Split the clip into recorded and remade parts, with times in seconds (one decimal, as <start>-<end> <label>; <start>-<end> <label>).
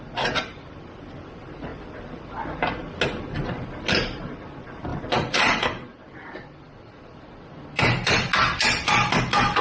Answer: 0.0-9.6 recorded